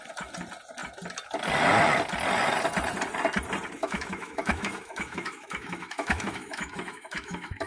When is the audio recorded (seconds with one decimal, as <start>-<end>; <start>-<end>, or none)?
0.0-3.8